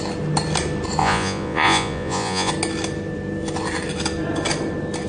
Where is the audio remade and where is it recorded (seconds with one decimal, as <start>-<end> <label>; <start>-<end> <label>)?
0.0-1.0 recorded; 1.0-2.5 remade; 2.5-5.1 recorded

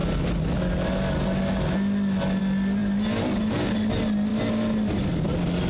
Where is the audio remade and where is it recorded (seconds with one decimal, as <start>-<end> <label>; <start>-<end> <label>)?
0.0-5.7 recorded

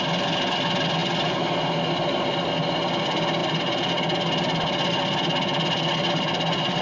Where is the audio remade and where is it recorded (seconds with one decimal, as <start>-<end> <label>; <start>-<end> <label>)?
0.0-6.8 recorded

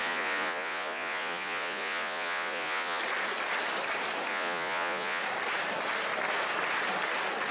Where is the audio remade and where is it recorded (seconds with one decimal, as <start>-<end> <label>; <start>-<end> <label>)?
0.0-3.0 remade; 3.0-4.3 recorded; 4.3-5.2 remade; 5.2-7.5 recorded

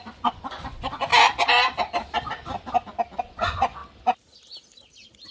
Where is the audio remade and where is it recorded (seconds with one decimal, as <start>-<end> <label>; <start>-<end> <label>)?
0.0-1.1 remade; 1.1-3.2 recorded; 3.2-3.8 remade; 3.8-5.3 recorded